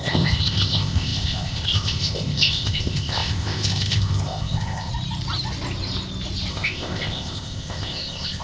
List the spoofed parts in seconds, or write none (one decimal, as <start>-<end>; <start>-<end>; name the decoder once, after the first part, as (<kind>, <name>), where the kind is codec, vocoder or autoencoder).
0.0-4.9 (codec, ZipCodec); 6.5-8.4